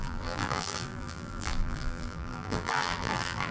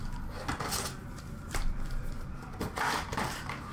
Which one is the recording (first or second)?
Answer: second